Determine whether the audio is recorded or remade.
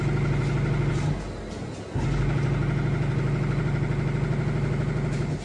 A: recorded